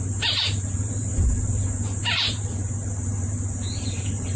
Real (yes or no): no